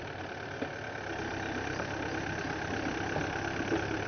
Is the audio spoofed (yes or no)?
no